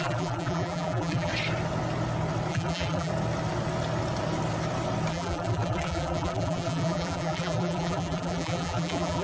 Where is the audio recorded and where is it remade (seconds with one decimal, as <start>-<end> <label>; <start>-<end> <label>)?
0.0-1.3 remade; 1.3-2.5 recorded; 2.5-3.1 remade; 3.1-5.1 recorded; 5.1-9.2 remade